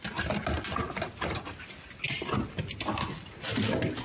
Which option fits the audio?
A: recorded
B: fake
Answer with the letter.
A